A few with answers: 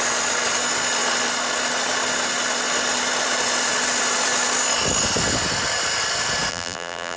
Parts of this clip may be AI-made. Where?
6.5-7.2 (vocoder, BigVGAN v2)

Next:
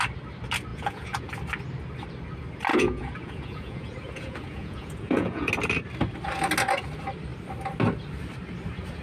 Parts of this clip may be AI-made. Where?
0.7-1.3 (vocoder, Vocos); 2.7-5.5

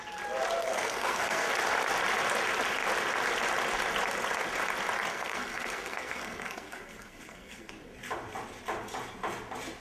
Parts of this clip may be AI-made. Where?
0.6-1.5 (codec, SNAC); 5.1-7.7

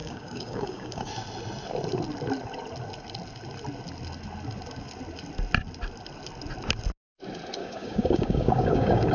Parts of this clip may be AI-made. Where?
0.0-1.1 (codec, DAC); 7.6-9.1